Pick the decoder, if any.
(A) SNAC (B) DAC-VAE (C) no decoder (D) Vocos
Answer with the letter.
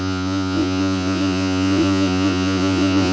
D